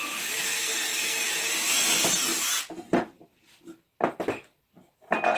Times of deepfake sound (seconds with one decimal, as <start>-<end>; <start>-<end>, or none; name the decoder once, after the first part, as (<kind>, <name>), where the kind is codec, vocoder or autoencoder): 0.0-1.4 (codec, SNAC)